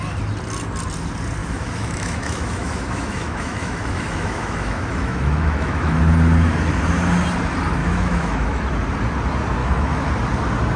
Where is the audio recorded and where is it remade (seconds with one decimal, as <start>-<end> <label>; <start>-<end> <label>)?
0.0-1.4 recorded; 1.4-6.0 remade; 6.0-7.8 recorded; 7.8-8.6 remade; 8.6-9.6 recorded; 9.6-10.1 remade; 10.1-10.8 recorded